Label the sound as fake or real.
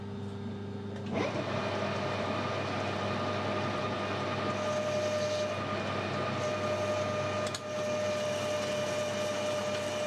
real